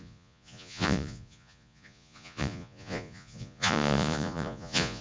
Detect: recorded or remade remade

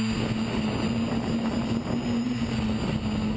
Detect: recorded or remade recorded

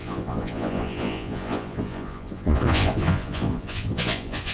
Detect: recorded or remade remade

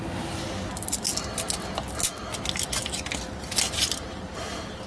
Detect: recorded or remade recorded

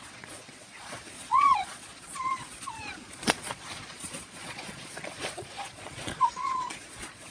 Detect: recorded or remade remade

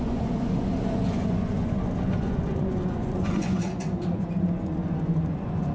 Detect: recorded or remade remade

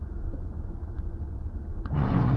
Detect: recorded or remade remade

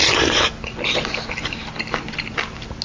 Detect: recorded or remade recorded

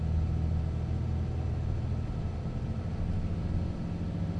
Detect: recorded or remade recorded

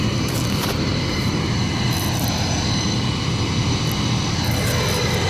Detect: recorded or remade recorded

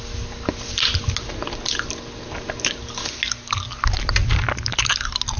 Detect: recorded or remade recorded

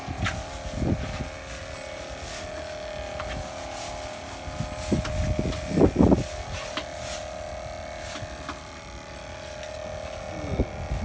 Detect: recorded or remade recorded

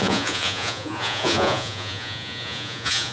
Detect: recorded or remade remade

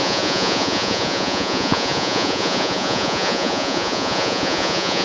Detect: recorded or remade remade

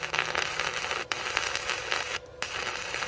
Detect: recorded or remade recorded